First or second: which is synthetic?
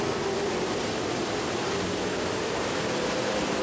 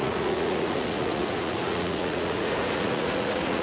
second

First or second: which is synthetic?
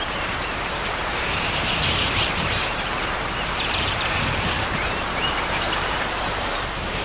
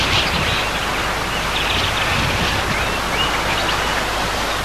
first